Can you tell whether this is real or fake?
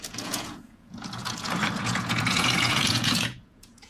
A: fake